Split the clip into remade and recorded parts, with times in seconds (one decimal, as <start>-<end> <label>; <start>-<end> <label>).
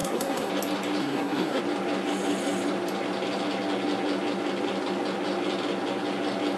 0.0-0.5 remade; 0.5-1.0 recorded; 1.0-1.6 remade; 1.6-6.6 recorded